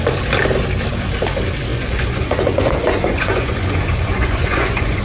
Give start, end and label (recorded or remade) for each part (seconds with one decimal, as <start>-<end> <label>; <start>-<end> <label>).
0.0-1.7 recorded; 1.7-5.0 remade